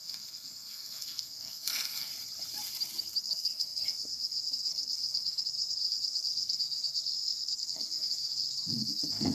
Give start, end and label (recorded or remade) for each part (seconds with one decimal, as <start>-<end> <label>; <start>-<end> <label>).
0.0-2.1 remade; 2.1-3.2 recorded; 3.2-9.3 remade